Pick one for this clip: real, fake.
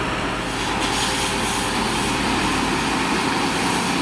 real